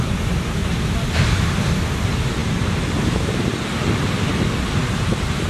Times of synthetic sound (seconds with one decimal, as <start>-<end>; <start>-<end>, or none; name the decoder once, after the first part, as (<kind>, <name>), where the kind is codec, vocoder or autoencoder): 0.0-0.6 (vocoder, BigVGAN v2); 1.8-5.5